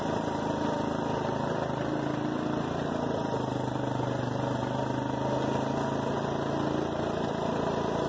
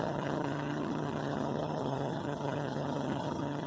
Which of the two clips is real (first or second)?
first